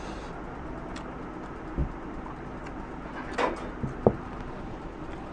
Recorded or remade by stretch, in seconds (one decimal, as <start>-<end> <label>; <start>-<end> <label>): 0.0-5.3 recorded